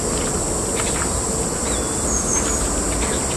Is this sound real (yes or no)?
yes